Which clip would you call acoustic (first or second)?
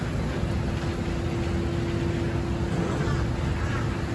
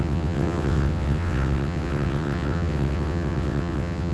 first